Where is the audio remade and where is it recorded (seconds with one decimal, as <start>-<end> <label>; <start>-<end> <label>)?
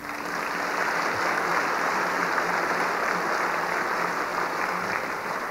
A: 0.0-1.5 recorded; 1.5-2.2 remade; 2.2-4.3 recorded; 4.3-5.5 remade